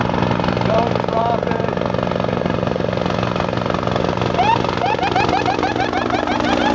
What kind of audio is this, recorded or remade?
recorded